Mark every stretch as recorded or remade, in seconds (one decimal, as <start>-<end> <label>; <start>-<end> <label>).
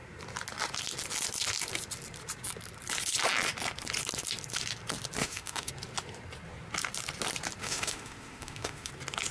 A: 0.0-5.2 recorded; 5.2-5.7 remade; 5.7-7.6 recorded; 7.6-8.9 remade; 8.9-9.3 recorded